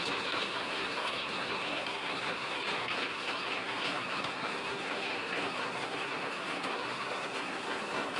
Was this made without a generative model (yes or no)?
no